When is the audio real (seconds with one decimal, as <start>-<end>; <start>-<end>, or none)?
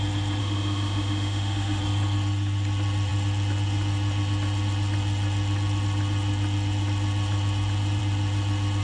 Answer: 0.0-0.4; 1.8-8.8